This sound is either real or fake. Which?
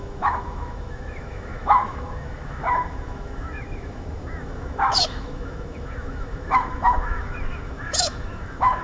fake